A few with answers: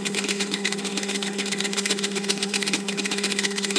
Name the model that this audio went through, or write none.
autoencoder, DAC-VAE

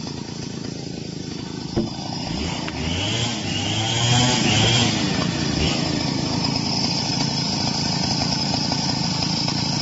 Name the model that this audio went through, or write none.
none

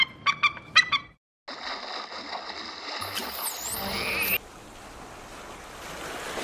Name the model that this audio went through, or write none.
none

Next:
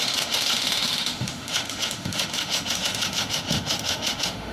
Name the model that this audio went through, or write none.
autoencoder, DAC-VAE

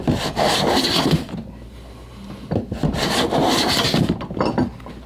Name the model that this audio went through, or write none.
none